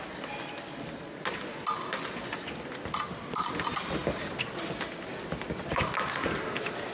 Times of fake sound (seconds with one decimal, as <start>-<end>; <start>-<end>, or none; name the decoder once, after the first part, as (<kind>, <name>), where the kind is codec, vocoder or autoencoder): none